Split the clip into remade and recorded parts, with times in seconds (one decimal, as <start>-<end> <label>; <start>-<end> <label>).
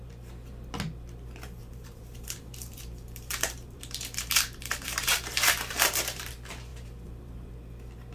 0.0-1.6 recorded; 1.6-6.3 remade; 6.3-6.7 recorded; 6.7-7.5 remade; 7.5-8.1 recorded